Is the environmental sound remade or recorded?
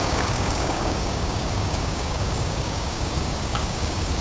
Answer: remade